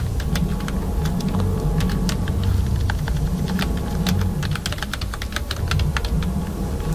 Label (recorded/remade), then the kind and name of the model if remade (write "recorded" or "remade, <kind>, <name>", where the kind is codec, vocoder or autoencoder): recorded